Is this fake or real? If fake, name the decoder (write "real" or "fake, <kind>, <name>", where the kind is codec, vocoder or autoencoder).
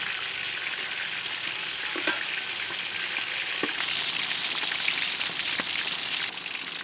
real